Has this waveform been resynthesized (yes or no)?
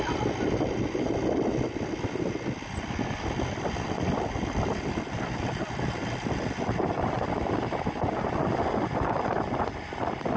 no